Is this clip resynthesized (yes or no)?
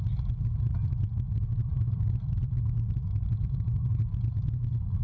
no